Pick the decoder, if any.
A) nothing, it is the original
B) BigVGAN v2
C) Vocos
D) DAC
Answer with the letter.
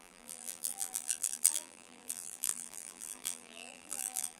B